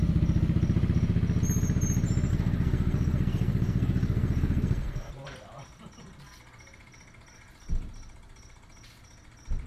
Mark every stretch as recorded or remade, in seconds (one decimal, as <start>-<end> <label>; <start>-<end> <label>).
0.0-2.3 recorded; 2.3-5.1 remade; 5.1-9.7 recorded